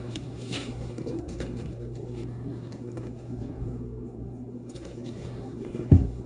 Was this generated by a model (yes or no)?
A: yes